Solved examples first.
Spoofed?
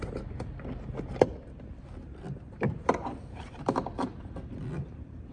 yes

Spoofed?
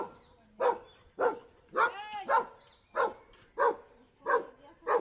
no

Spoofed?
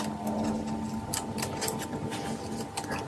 no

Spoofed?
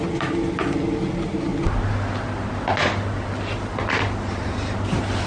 no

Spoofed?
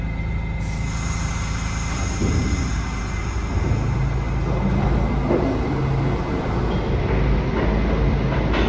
no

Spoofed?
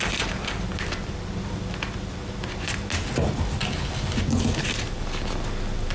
no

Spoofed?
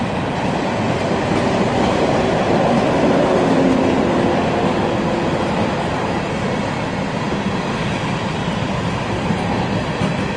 no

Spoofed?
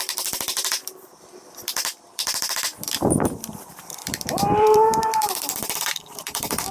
yes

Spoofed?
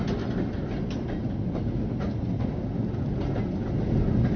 no